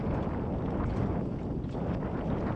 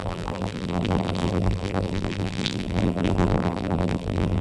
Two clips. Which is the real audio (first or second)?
first